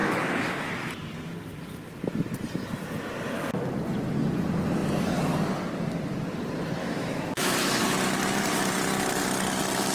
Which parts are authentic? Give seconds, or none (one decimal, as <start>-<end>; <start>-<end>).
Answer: 0.7-6.8; 7.8-9.9